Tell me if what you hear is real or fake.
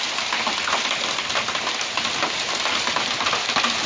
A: real